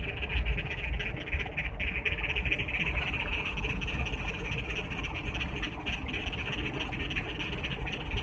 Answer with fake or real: real